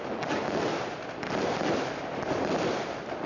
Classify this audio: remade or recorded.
recorded